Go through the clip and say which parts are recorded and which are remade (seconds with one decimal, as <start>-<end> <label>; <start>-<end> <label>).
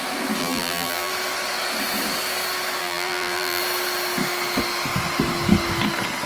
0.0-0.4 recorded; 0.4-1.1 remade; 1.1-2.8 recorded; 2.8-3.6 remade; 3.6-6.3 recorded